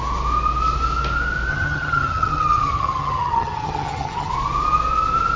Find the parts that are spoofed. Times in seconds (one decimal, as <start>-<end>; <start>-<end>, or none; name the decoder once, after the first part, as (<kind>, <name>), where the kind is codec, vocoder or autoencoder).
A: 1.5-4.3 (vocoder, HiFi-GAN)